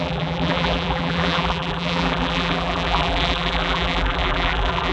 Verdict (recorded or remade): remade